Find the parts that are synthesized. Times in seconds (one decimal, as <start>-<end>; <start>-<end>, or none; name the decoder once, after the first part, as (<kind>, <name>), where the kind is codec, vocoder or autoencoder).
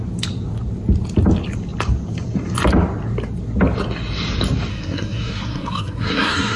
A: 4.7-6.6 (codec, SNAC)